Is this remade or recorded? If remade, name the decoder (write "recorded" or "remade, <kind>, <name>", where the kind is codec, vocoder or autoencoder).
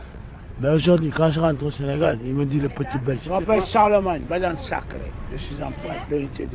remade, vocoder, WaveNeXt